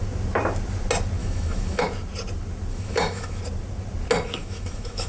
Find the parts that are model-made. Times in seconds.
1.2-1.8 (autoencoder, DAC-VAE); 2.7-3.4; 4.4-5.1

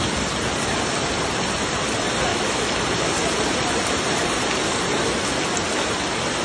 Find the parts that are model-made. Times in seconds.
2.3-2.8 (autoencoder, DAC-VAE)